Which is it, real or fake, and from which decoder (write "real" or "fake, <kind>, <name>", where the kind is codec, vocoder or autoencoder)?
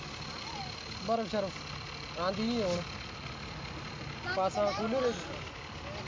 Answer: real